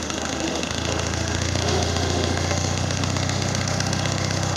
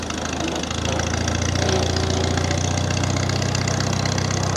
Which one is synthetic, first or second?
first